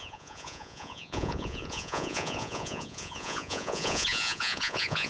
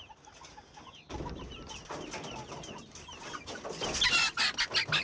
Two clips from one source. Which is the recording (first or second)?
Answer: second